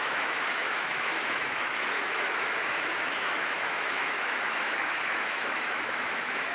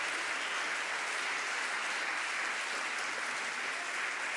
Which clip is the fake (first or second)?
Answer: first